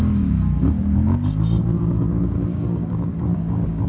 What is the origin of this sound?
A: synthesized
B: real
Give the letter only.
A